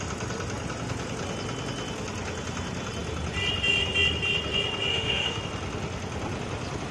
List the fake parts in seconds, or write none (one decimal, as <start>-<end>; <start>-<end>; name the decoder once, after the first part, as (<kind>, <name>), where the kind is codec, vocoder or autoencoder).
4.9-5.4 (autoencoder, DAC-VAE)